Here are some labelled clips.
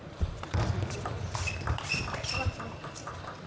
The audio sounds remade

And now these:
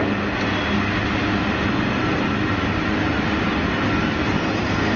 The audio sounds recorded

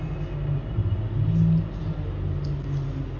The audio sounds recorded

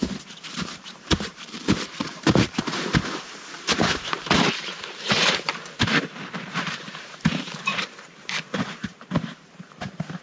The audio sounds remade